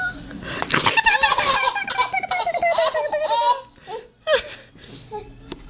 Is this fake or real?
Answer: real